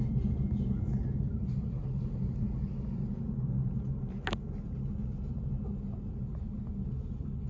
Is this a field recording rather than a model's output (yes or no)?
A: yes